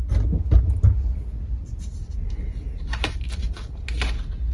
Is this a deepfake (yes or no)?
no